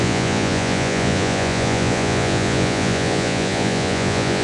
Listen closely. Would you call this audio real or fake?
fake